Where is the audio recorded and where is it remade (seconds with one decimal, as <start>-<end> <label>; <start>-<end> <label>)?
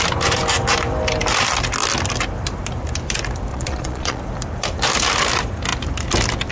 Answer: 0.0-3.5 recorded; 3.5-4.2 remade; 4.2-6.5 recorded